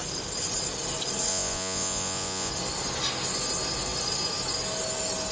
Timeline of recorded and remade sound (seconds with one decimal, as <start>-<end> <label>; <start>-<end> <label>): 0.0-1.3 recorded; 1.3-2.5 remade; 2.5-5.3 recorded